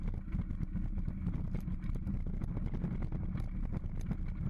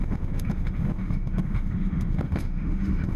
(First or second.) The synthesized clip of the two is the second